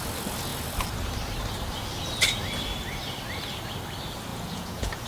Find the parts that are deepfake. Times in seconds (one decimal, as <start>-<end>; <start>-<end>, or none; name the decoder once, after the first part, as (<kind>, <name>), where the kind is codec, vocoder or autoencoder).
4.3-5.1 (vocoder, Vocos)